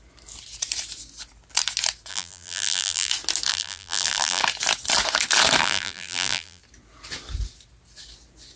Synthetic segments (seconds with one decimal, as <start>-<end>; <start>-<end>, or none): 2.1-3.1; 3.5-4.4; 5.6-6.6